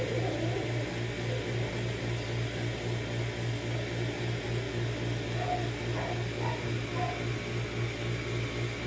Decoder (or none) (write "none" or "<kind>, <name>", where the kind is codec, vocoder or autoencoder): none